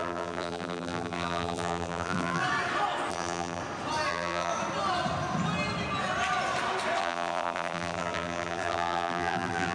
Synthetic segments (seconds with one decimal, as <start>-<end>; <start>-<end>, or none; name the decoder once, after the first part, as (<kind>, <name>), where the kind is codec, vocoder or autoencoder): 0.0-2.4 (vocoder, BigVGAN v2); 3.1-3.6; 4.1-4.5; 7.0-9.7